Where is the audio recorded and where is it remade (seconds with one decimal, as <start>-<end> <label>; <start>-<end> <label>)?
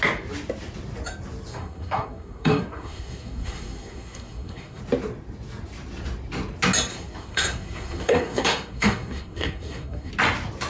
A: 0.0-1.5 recorded; 1.5-4.8 remade; 4.8-6.9 recorded; 6.9-10.1 remade; 10.1-10.7 recorded